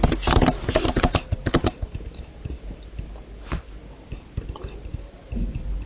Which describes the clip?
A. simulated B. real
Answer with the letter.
B